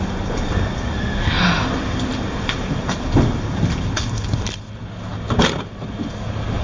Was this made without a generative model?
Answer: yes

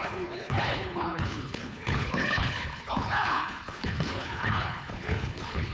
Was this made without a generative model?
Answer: no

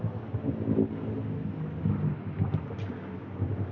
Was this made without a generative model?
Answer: yes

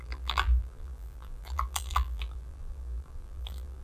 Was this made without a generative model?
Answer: no